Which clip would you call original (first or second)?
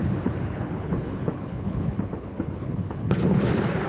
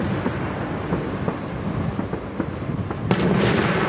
second